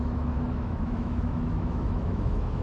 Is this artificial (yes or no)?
yes